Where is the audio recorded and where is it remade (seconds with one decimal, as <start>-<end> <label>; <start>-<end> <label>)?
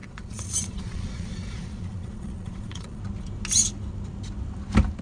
0.0-3.0 remade; 3.0-5.0 recorded